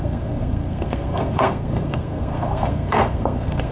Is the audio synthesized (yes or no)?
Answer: yes